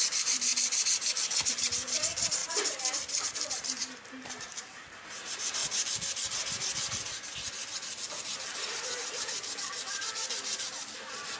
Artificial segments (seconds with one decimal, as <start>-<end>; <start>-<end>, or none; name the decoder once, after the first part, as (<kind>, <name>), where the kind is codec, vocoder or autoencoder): 0.0-0.5 (vocoder, BigVGAN v2); 1.5-5.6; 8.0-11.4

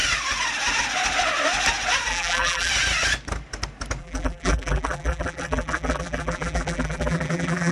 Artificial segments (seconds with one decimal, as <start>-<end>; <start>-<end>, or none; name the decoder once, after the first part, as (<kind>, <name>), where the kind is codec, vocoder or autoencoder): 2.1-2.7 (vocoder, BigVGAN v2); 4.0-7.7

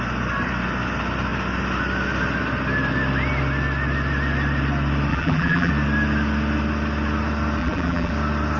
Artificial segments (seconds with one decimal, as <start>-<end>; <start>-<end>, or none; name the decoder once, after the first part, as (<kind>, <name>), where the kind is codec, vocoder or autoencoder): 5.1-5.7 (vocoder, BigVGAN v2); 7.6-8.1